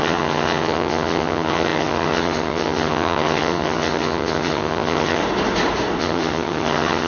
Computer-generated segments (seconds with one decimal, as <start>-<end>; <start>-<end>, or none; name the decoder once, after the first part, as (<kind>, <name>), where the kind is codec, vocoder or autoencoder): 0.0-5.2 (vocoder, HiFi-GAN); 6.0-7.1